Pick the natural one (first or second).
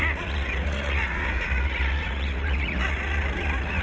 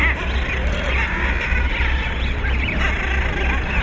second